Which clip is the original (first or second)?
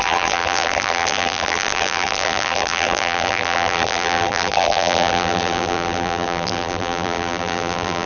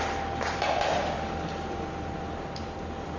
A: second